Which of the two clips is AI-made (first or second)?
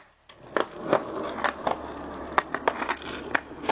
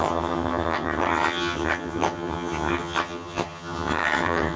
second